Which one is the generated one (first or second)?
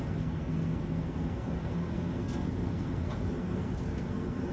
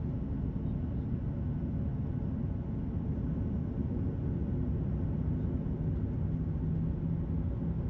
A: first